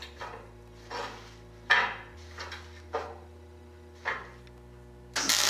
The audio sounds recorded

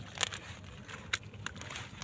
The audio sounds recorded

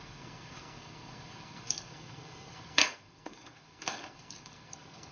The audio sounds remade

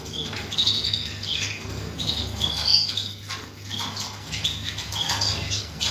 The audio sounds remade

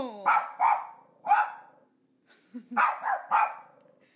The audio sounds recorded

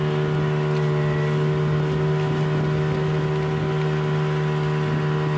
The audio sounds recorded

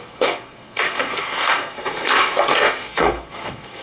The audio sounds remade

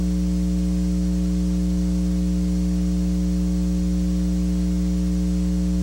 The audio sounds recorded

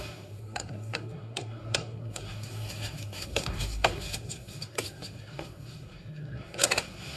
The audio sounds remade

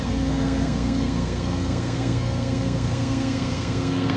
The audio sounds remade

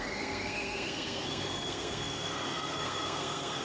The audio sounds remade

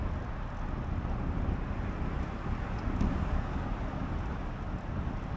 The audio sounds recorded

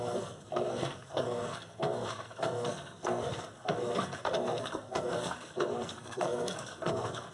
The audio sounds remade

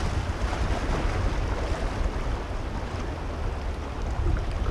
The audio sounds recorded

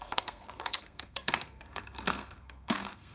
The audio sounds remade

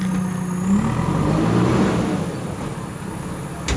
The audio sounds recorded